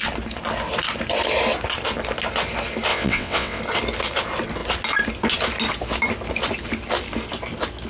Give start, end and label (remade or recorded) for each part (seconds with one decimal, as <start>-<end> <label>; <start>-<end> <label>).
0.0-2.9 recorded; 2.9-3.6 remade; 3.6-7.9 recorded